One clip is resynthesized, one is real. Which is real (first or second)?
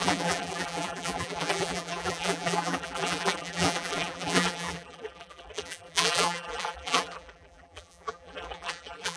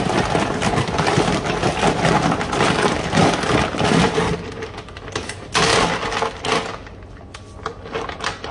second